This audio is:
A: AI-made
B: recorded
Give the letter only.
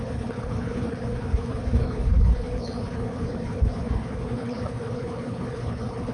A